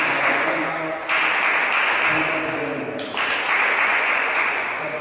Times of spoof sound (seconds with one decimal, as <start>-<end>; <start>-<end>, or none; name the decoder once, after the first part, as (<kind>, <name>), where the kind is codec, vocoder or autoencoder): 0.0-1.2 (vocoder, Vocos); 3.8-5.0